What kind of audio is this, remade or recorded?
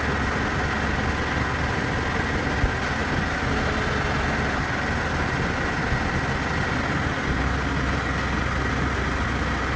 recorded